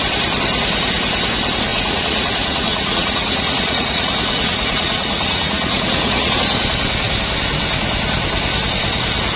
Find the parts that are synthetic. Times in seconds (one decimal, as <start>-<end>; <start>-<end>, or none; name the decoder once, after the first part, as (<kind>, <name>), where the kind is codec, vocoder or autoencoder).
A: 1.7-6.4 (vocoder, Vocos)